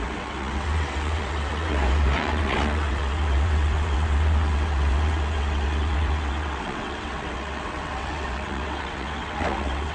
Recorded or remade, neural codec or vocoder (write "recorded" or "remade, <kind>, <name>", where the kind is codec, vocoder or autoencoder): remade, vocoder, WaveNeXt